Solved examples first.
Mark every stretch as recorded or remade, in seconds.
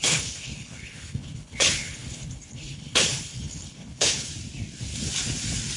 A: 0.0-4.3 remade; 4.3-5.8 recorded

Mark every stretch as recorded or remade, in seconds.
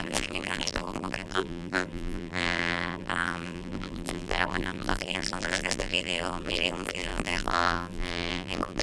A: 0.0-8.8 remade